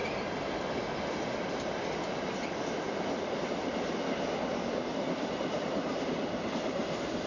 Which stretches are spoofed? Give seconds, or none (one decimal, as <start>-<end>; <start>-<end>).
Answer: none